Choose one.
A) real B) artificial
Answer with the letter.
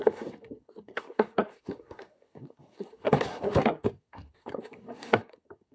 B